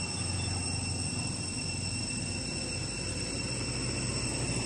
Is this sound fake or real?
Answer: real